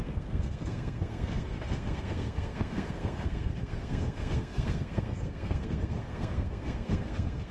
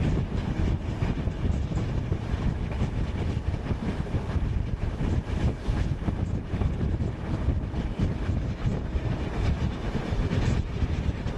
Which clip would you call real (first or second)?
second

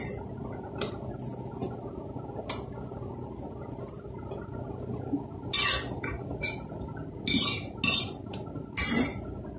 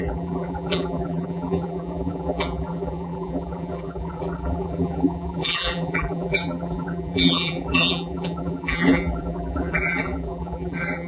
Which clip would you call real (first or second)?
first